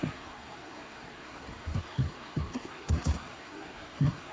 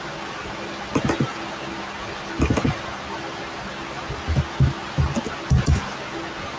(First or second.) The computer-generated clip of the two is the first